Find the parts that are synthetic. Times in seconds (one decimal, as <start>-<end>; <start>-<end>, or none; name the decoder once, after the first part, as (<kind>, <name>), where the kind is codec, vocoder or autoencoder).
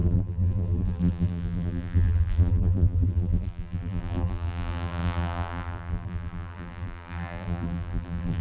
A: 0.0-8.4 (vocoder, BigVGAN v2)